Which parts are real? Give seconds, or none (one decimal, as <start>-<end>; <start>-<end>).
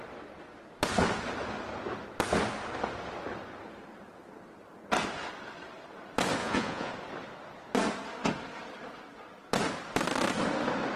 0.0-6.4; 6.9-11.0